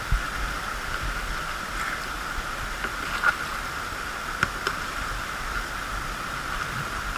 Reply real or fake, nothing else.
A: real